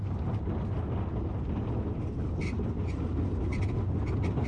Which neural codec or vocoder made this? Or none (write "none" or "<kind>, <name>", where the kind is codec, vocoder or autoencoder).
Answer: none